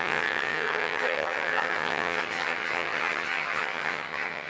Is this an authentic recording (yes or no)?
no